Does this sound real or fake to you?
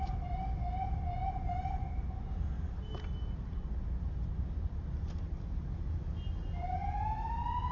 real